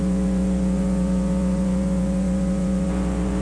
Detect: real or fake fake